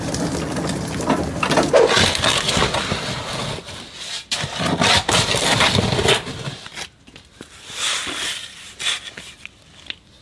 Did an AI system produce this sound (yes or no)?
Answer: no